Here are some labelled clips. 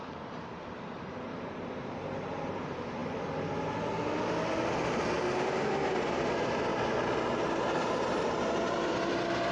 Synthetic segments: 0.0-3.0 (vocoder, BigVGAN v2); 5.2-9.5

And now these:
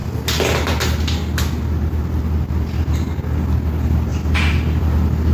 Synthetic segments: none

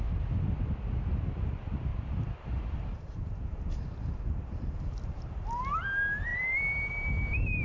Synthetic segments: 1.9-5.6 (vocoder, BigVGAN v2)

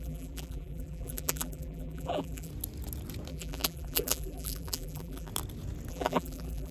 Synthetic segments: 0.0-2.5 (vocoder, BigVGAN v2); 3.3-5.3; 5.9-6.7

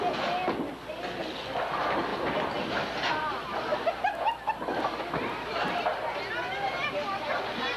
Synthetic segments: none

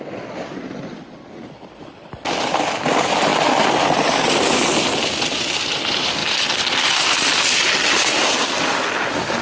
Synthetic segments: 6.2-7.7 (vocoder, BigVGAN v2)